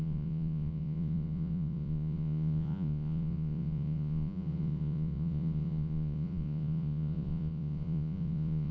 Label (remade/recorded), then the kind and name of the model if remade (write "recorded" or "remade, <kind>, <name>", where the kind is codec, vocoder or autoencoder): remade, vocoder, Vocos